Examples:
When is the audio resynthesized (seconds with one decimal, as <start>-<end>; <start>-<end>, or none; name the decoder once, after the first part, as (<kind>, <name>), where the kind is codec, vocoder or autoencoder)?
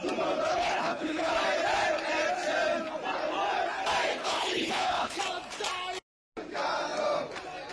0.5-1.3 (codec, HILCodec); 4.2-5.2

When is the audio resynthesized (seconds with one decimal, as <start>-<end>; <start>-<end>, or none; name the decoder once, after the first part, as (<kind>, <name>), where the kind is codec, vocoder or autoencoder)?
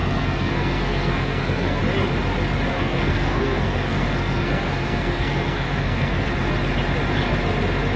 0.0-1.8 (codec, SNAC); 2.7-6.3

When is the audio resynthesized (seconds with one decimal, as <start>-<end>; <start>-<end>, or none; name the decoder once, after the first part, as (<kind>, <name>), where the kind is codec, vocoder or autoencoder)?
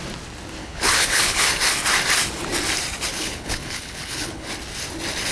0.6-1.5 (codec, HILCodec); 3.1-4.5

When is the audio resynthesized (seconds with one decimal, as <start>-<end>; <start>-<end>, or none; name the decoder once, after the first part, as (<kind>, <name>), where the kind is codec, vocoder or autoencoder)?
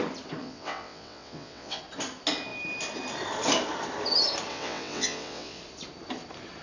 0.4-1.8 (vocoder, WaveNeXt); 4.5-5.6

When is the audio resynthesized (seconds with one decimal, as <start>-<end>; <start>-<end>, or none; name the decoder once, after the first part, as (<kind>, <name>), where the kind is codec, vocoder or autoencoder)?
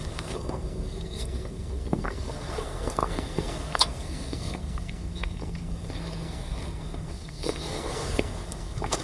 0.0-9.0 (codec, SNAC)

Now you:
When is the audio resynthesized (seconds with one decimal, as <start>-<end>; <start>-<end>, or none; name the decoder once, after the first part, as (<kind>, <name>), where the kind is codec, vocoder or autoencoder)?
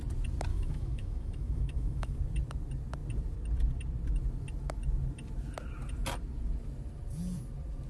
0.5-2.2 (autoencoder, DAC-VAE)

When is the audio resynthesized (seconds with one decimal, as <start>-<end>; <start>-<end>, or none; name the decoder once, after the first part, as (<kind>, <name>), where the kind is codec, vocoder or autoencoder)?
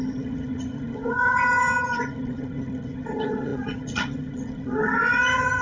0.0-5.6 (vocoder, HiFi-GAN)